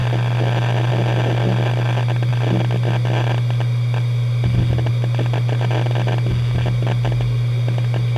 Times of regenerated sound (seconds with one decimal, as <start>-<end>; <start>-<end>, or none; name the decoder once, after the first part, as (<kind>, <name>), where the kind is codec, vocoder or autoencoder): none